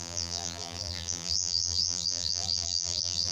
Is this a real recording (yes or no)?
no